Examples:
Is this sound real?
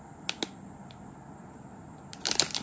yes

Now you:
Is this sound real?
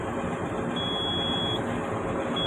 yes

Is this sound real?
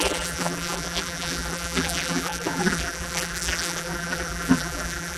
no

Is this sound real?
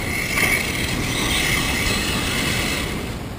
yes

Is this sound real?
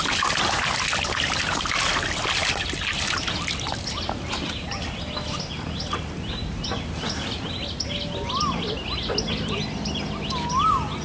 yes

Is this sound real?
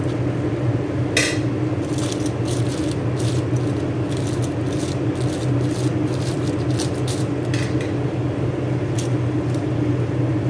yes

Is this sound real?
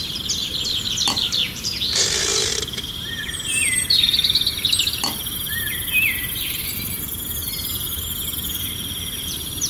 no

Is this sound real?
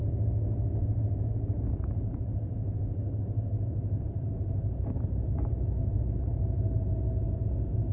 yes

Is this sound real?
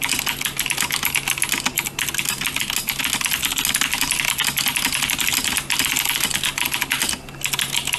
yes